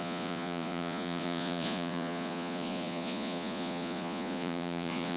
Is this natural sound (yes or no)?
no